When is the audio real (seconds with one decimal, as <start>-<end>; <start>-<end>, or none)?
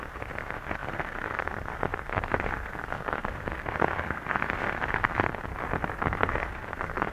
5.5-6.0